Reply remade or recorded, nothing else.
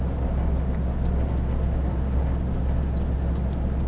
recorded